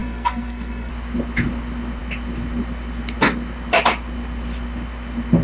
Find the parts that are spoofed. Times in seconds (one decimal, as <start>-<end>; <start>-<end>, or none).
0.0-0.9